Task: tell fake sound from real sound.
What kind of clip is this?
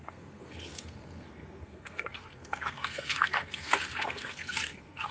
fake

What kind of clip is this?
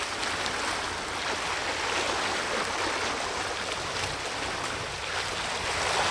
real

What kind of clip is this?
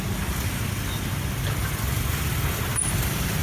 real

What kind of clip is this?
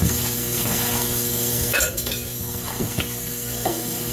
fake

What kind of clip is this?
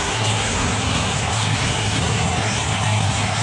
fake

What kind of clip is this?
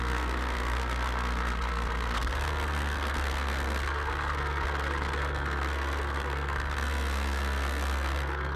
fake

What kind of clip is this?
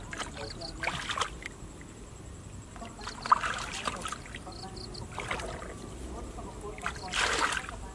real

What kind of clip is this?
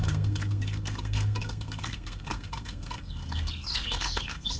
fake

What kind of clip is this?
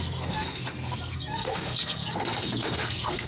fake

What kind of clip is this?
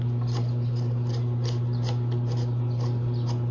real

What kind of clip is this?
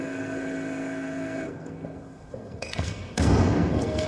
fake